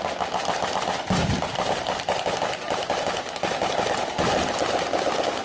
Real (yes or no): yes